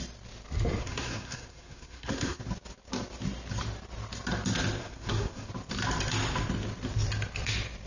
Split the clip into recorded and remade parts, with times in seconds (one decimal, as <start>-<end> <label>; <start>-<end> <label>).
0.0-0.8 recorded; 0.8-2.4 remade; 2.4-4.8 recorded; 4.8-5.5 remade; 5.5-7.9 recorded